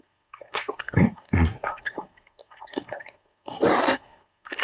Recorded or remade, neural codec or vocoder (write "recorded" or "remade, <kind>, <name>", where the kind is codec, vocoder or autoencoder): remade, codec, SNAC